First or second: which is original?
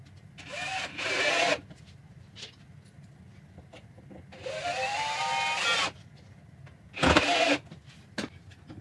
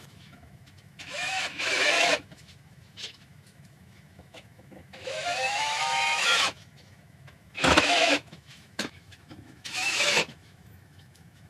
first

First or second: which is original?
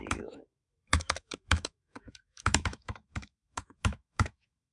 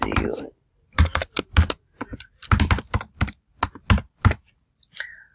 second